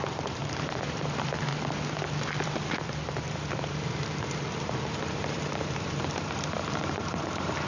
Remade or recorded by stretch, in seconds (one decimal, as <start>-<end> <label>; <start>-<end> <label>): 0.0-1.5 remade; 1.5-2.4 recorded; 2.4-7.7 remade